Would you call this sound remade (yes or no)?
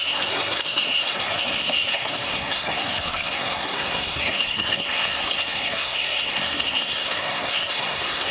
yes